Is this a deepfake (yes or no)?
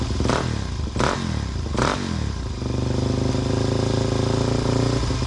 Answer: no